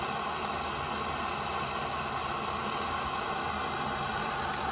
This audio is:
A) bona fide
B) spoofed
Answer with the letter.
A